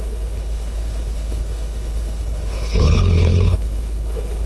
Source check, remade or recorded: remade